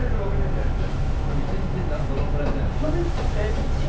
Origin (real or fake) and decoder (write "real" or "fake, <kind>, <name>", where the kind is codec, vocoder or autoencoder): real